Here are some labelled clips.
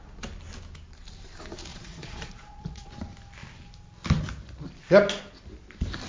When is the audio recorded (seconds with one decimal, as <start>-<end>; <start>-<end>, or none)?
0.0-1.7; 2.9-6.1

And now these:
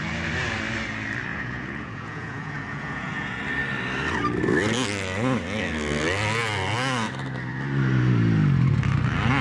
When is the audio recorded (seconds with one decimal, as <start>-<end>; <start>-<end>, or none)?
0.0-1.3; 3.4-9.4

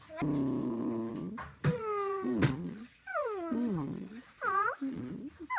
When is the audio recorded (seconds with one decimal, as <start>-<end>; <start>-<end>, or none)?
0.0-0.6; 1.1-1.7; 5.1-5.6

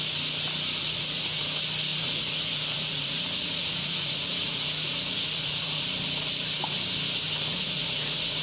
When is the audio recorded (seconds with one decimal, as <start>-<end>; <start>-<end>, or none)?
0.0-0.8; 1.4-1.9; 5.8-7.5

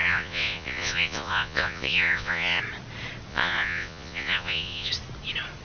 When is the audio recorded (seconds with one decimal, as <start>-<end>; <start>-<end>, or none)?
2.6-3.3; 4.9-5.6

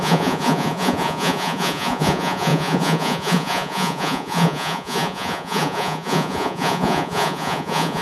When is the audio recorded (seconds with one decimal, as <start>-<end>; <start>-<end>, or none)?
none

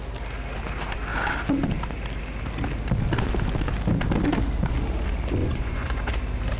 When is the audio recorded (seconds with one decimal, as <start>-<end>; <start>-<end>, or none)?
0.0-5.4; 6.1-6.6

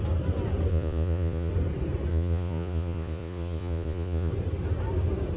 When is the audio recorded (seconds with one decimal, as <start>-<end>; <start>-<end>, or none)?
0.0-0.7; 1.5-2.1; 4.3-5.4